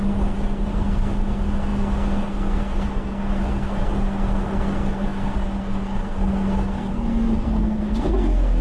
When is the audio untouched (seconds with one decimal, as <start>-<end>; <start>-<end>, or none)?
none